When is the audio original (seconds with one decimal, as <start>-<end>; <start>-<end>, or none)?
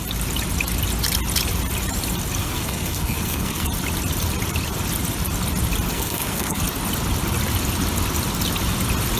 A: 0.0-2.4; 3.7-5.9; 6.6-9.2